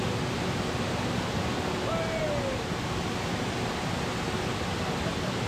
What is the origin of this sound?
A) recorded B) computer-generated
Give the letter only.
A